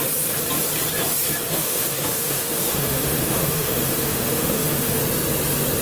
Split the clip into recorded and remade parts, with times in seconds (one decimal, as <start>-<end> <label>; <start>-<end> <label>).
0.0-1.5 recorded; 1.5-5.0 remade; 5.0-5.8 recorded